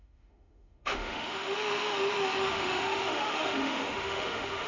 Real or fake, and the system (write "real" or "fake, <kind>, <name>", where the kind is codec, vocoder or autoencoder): fake, autoencoder, DAC-VAE